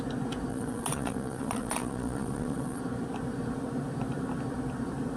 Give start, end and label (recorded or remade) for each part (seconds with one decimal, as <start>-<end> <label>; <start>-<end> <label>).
0.0-0.5 recorded; 0.5-2.8 remade; 2.8-5.2 recorded